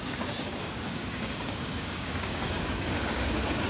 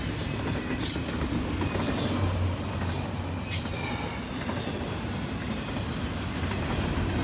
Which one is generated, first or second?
first